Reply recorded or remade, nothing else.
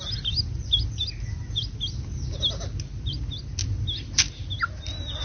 recorded